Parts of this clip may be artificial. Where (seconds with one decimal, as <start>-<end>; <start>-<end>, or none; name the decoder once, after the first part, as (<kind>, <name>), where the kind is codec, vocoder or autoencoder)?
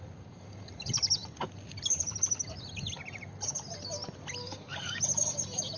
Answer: 4.4-5.0 (codec, DAC)